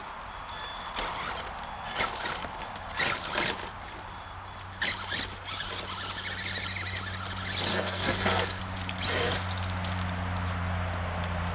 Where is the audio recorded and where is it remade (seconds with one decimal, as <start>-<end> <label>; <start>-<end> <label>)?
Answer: 0.0-7.7 recorded; 7.7-8.6 remade; 8.6-11.5 recorded